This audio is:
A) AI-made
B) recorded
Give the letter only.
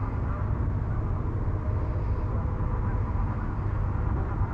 B